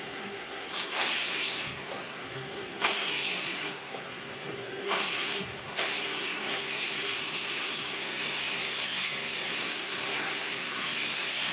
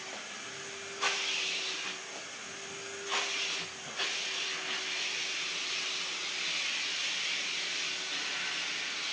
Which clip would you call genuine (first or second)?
second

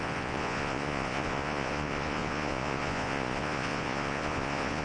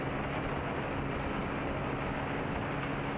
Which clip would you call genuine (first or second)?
second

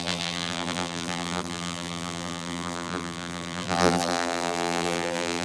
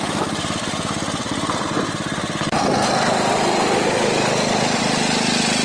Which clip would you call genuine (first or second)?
second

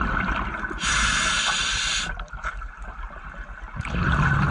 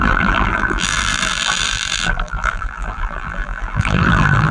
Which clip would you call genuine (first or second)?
first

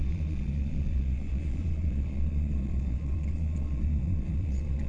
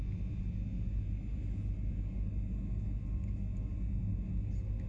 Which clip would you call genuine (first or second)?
second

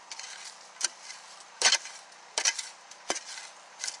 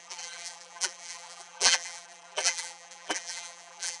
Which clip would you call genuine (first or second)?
first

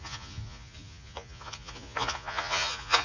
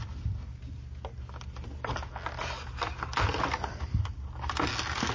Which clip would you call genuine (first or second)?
second